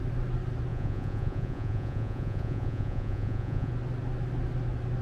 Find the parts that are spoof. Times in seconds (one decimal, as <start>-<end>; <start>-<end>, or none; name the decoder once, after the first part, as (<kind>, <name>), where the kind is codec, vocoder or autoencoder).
0.7-3.7 (vocoder, Vocos)